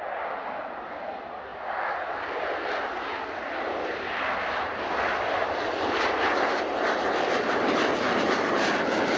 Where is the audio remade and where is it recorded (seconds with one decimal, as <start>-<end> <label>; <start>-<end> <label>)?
0.0-9.2 recorded